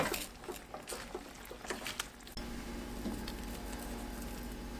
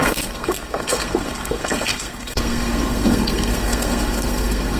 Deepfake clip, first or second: second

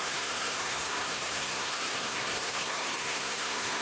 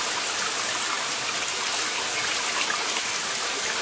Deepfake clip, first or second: first